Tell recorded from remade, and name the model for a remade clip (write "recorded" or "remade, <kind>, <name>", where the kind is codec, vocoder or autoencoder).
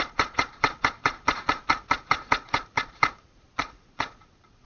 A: remade, vocoder, Vocos